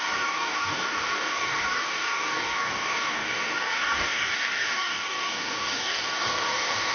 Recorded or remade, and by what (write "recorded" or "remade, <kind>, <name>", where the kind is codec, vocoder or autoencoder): remade, codec, DAC